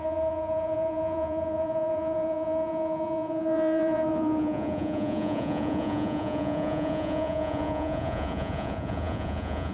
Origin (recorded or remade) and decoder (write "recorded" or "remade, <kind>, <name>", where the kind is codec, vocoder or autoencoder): remade, vocoder, Vocos